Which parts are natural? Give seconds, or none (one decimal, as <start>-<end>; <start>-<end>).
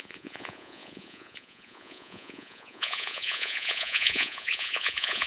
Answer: none